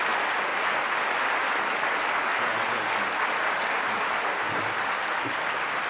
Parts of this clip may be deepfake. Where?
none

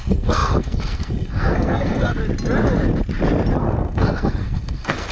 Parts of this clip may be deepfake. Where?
0.0-2.2; 3.6-5.1

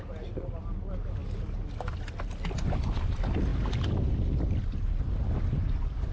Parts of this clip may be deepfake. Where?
none

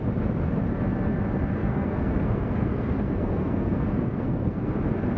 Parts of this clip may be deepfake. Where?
1.6-4.7

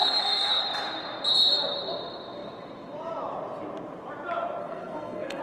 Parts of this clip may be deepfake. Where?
0.0-0.6; 4.6-5.4